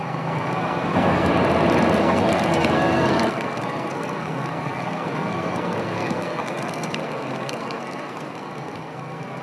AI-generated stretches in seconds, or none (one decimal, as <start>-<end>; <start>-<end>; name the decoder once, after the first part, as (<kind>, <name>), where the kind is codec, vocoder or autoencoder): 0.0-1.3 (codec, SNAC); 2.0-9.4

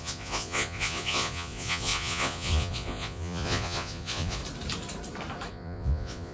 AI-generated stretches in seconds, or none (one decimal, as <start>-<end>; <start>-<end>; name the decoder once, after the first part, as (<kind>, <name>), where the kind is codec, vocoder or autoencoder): 0.0-4.4 (vocoder, Vocos); 5.5-6.3

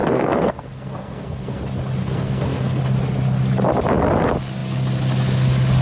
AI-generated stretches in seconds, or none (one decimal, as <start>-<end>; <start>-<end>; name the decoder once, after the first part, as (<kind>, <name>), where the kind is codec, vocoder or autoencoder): 0.0-1.6 (codec, SNAC); 2.0-2.8

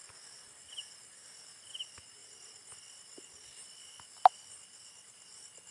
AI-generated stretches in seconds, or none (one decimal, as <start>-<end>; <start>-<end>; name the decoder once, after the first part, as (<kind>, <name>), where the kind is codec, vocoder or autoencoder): none

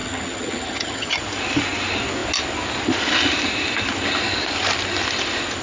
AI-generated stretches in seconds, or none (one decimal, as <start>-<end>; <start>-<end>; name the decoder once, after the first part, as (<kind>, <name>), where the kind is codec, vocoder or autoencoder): 0.0-1.2 (vocoder, HiFi-GAN)

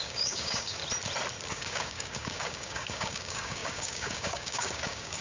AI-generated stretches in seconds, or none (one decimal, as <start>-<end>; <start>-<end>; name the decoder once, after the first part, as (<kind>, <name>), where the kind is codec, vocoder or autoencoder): 0.0-0.8 (codec, DAC); 1.5-5.2